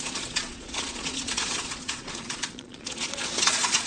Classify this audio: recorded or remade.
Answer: remade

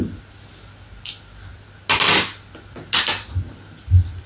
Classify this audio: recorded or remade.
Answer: recorded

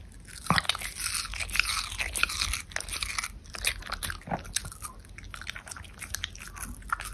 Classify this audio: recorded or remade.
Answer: recorded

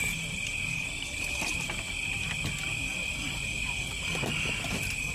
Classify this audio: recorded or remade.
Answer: recorded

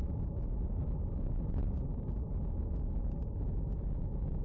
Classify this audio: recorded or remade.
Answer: recorded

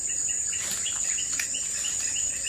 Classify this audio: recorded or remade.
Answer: recorded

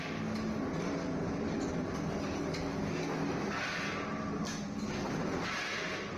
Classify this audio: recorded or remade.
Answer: recorded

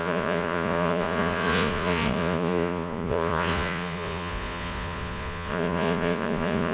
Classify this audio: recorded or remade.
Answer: remade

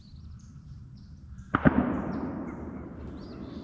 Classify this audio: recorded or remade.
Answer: recorded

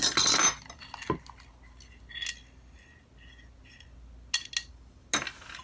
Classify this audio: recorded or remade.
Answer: recorded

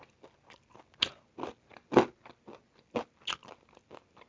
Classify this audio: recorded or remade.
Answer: recorded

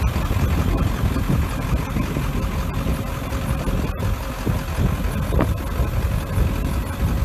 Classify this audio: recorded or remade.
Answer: recorded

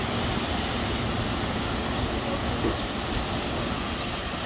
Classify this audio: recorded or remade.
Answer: recorded